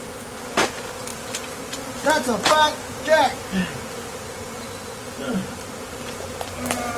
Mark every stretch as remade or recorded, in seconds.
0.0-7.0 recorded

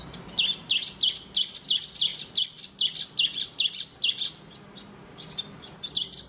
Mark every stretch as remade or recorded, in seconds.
0.0-6.3 recorded

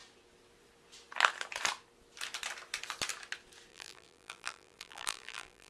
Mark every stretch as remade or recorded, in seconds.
0.0-3.7 recorded; 3.7-5.7 remade

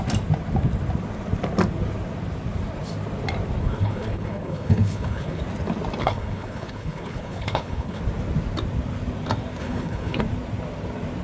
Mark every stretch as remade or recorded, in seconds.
0.0-3.6 recorded; 3.6-5.4 remade; 5.4-6.0 recorded; 6.0-8.0 remade; 8.0-9.6 recorded; 9.6-10.2 remade; 10.2-11.2 recorded

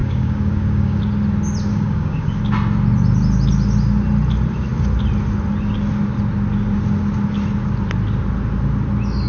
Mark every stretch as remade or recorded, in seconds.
0.0-1.0 remade; 1.0-1.7 recorded; 1.7-2.4 remade; 2.4-9.3 recorded

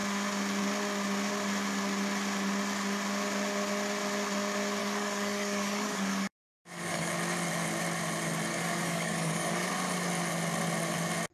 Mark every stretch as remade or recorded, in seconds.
0.0-4.8 recorded; 4.8-7.1 remade; 7.1-8.5 recorded; 8.5-9.7 remade; 9.7-11.3 recorded

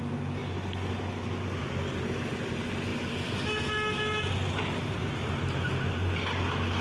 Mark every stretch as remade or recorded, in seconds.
0.0-6.8 recorded

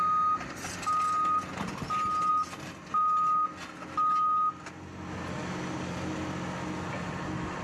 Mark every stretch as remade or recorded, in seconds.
0.0-7.6 recorded